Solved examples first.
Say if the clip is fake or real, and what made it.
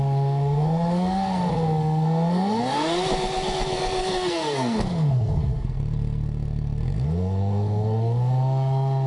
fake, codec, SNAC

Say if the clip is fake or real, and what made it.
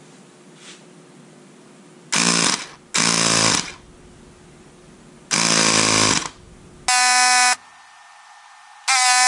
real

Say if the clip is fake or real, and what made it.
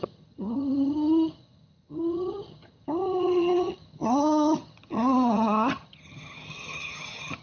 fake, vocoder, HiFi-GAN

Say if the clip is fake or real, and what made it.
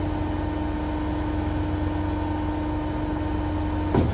real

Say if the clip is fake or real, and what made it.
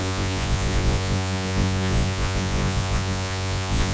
fake, vocoder, Vocos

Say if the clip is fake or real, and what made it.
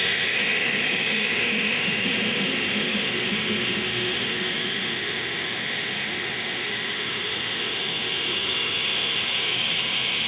fake, autoencoder, DAC-VAE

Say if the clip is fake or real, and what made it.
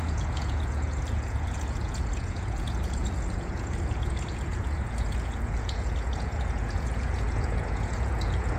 fake, vocoder, Vocos